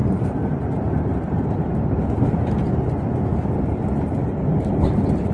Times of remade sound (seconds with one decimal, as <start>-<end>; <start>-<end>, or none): 0.0-2.5; 3.3-3.8; 4.2-4.7